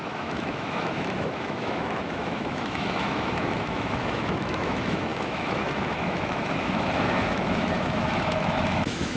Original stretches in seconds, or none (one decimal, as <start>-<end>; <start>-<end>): none